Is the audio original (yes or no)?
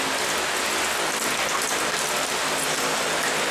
yes